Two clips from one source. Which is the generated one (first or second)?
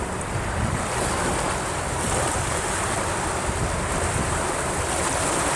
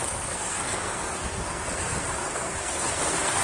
second